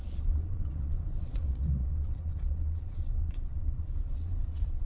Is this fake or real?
fake